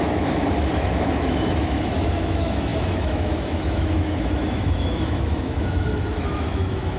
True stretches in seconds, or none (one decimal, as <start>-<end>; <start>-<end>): none